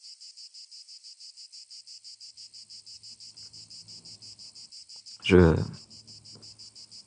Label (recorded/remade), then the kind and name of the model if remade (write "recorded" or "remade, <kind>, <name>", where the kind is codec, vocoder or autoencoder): recorded